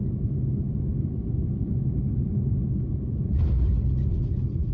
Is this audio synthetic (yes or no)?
no